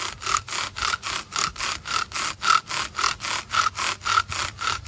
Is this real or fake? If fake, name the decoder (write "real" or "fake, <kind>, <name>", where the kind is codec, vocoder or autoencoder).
real